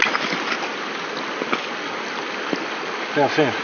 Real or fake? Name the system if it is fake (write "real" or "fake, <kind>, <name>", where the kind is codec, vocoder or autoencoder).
real